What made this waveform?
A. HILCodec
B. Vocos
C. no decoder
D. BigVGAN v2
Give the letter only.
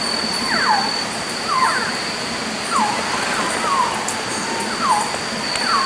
C